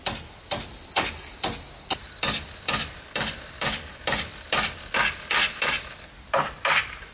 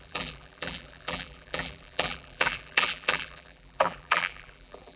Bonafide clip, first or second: first